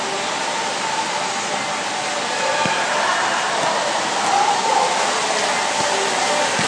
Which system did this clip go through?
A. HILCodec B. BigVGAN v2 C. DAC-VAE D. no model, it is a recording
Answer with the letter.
D